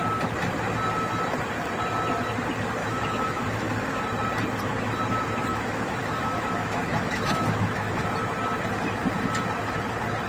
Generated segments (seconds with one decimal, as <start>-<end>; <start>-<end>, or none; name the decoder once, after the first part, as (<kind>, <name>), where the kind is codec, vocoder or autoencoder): 2.8-4.0 (autoencoder, DAC-VAE); 5.5-8.0